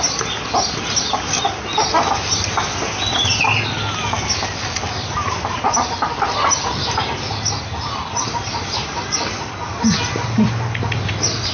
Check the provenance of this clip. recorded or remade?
recorded